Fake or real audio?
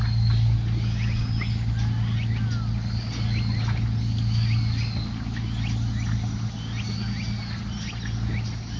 real